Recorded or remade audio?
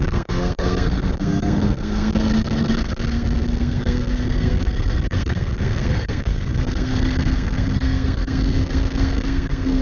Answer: remade